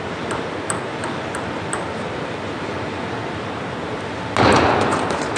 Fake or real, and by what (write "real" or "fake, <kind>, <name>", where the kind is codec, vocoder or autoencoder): real